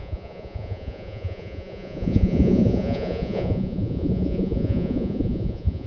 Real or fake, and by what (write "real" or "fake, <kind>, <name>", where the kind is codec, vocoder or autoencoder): fake, vocoder, Vocos